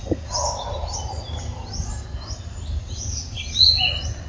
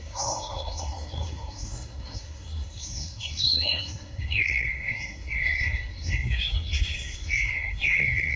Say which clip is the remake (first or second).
second